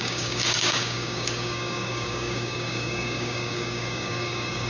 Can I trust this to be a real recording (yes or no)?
no